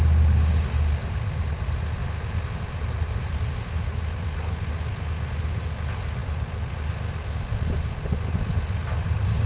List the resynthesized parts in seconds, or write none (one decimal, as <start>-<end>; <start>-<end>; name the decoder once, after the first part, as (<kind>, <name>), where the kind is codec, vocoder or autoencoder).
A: 6.2-7.3 (vocoder, BigVGAN v2)